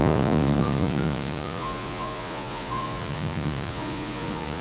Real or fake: fake